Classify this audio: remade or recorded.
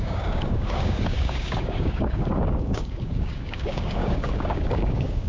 remade